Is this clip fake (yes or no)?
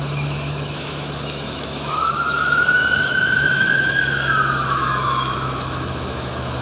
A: yes